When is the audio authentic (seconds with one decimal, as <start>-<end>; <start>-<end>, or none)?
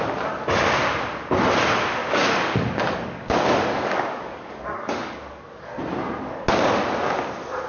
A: 0.0-2.0; 5.8-7.7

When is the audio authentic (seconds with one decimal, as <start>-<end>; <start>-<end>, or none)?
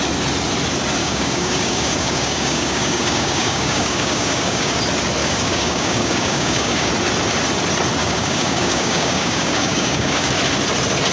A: 0.0-1.0; 4.8-5.2; 6.9-8.0; 10.3-11.1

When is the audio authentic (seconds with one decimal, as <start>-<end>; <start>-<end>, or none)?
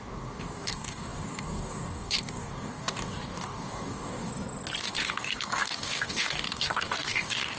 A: 4.3-4.8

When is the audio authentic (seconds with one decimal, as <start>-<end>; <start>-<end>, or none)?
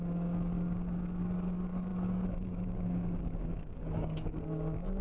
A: none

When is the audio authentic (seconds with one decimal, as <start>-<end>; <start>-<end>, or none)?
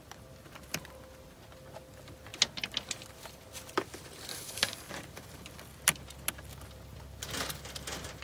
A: 0.0-4.3; 4.9-8.2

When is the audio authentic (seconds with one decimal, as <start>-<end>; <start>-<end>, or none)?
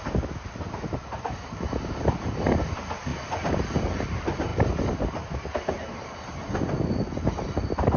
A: 0.0-8.0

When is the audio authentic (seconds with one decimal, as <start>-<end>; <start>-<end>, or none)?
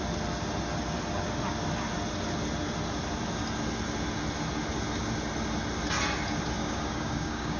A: 0.0-6.6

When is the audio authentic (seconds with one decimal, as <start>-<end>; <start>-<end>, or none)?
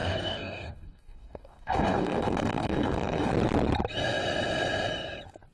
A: 3.3-5.5